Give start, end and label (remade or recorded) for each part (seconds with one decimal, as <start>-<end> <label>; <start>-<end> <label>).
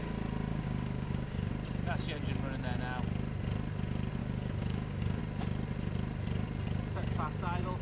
0.0-0.5 recorded; 0.5-1.5 remade; 1.5-4.2 recorded; 4.2-5.2 remade; 5.2-7.8 recorded